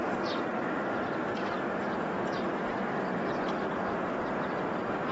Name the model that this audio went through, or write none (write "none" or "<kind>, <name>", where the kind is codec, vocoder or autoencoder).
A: none